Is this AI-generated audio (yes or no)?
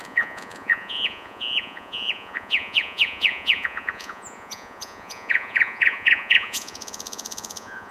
yes